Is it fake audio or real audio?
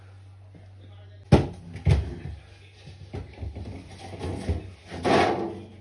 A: real